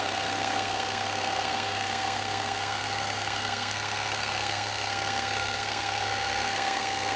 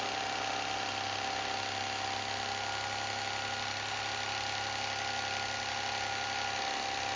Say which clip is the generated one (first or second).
first